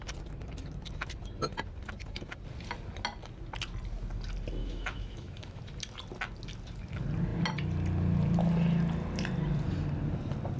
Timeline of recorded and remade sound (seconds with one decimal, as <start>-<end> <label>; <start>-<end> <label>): 0.0-4.6 recorded; 4.6-5.6 remade; 5.6-10.6 recorded